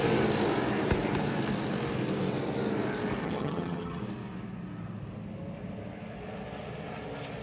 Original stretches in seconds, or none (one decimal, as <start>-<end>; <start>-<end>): 0.0-3.2; 4.0-7.4